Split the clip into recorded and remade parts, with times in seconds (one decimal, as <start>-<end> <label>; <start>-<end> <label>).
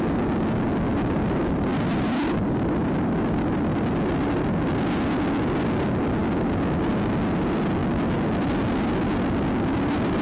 0.0-0.9 recorded; 0.9-4.6 remade; 4.6-10.2 recorded